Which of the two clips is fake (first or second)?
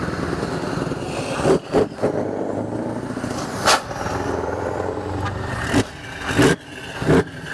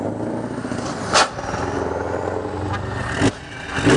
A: first